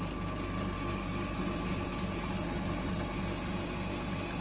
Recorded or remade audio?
recorded